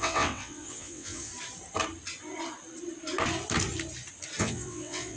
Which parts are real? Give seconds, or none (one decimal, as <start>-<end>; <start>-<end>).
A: 1.3-4.4